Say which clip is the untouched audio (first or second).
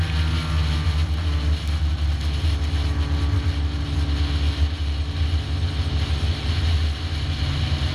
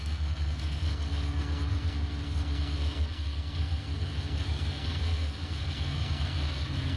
first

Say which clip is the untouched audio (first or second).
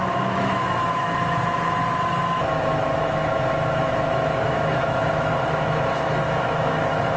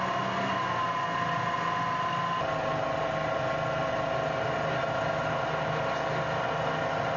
second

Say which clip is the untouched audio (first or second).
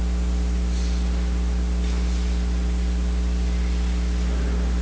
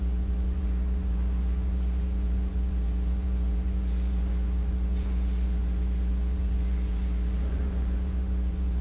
first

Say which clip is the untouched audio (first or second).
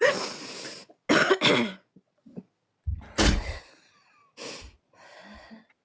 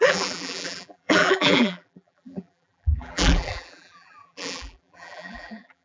first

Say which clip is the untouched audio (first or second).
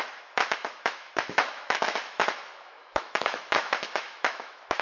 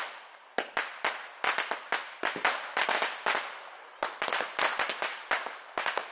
second